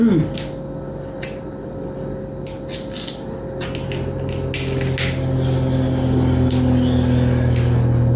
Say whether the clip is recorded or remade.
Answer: recorded